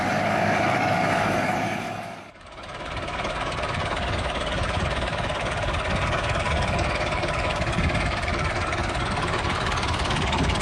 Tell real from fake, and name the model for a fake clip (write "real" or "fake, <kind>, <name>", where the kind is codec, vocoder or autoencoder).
fake, codec, DAC